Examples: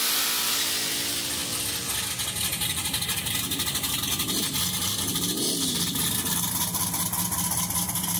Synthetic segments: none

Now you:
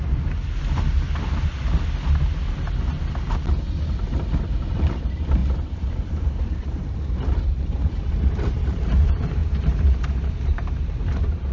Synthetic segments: 0.0-1.5 (vocoder, BigVGAN v2); 4.1-5.4; 6.1-11.5